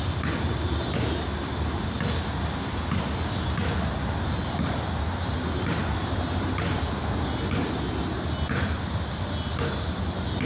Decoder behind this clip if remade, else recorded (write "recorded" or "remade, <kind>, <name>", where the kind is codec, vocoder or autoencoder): recorded